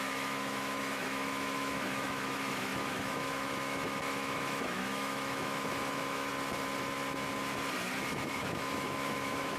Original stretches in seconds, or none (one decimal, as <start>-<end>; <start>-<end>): 6.3-8.1